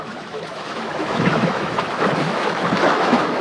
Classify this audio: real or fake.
fake